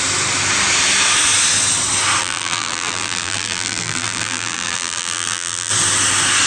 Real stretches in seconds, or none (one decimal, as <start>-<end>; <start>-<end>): 0.0-2.2; 5.7-6.5

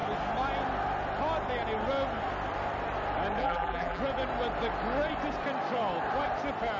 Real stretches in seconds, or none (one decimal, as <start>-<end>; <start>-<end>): 0.0-3.4; 4.0-6.8

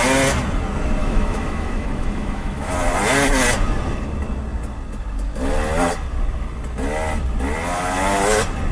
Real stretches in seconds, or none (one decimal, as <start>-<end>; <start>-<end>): 0.0-1.0; 2.7-8.7